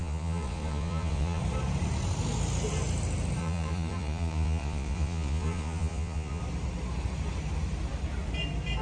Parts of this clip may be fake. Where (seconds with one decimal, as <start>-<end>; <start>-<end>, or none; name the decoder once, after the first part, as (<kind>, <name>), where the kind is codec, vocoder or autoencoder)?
0.0-1.4 (vocoder, Vocos); 3.4-6.4

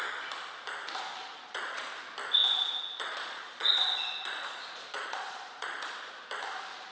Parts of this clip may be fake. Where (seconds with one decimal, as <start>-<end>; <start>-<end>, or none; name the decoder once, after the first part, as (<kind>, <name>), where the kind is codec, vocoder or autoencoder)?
1.2-1.9 (vocoder, Vocos); 2.4-5.9

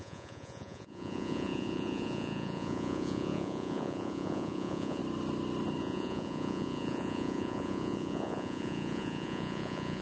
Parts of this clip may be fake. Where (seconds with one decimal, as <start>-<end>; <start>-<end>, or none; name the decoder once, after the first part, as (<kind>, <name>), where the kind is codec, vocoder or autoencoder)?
0.0-5.0 (vocoder, Vocos); 5.8-10.0